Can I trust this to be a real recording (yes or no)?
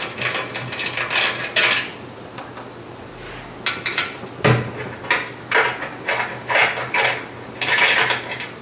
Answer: yes